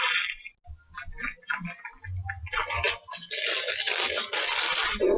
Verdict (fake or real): real